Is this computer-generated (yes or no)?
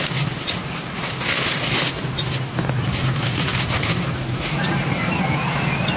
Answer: no